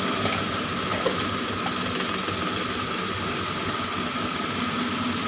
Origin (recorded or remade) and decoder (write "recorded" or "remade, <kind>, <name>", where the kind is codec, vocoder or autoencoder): recorded